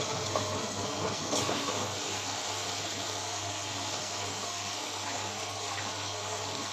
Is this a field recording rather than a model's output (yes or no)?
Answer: no